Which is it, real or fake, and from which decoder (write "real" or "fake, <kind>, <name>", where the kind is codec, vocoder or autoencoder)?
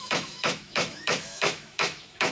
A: fake, autoencoder, DAC-VAE